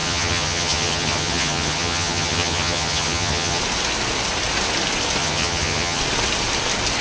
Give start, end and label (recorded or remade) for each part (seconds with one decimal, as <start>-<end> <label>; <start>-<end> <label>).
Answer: 0.0-3.6 remade; 3.6-5.2 recorded; 5.2-6.0 remade; 6.0-7.0 recorded